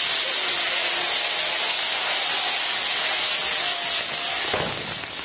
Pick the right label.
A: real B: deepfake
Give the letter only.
A